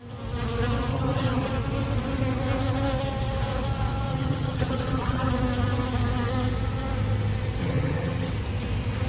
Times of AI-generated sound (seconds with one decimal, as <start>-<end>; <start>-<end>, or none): 0.9-1.5; 4.1-5.3; 7.6-8.3